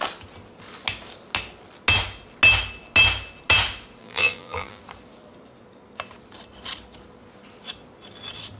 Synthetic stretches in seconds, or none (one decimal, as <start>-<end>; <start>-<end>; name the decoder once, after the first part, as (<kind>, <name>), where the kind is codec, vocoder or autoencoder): 4.0-4.8 (vocoder, BigVGAN v2)